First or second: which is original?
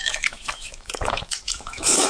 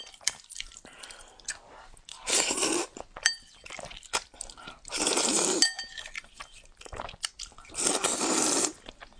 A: second